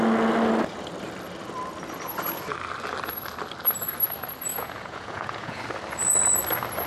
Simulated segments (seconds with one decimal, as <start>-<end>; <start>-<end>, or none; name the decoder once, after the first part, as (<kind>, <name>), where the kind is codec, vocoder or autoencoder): 4.5-5.6 (vocoder, Vocos)